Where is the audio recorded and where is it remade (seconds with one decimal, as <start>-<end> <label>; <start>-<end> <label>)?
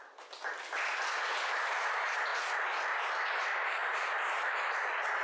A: 0.0-5.2 recorded